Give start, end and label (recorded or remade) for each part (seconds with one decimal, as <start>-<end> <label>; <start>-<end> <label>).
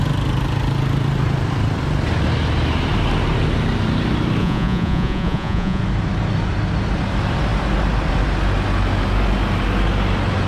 0.0-4.4 recorded; 4.4-5.8 remade; 5.8-10.5 recorded